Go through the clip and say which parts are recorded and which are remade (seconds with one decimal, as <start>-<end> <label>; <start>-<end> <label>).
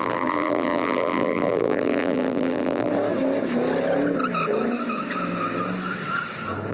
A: 0.0-2.9 remade; 2.9-6.7 recorded